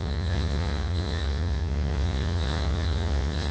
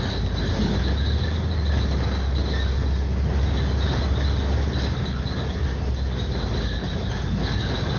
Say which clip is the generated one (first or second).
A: first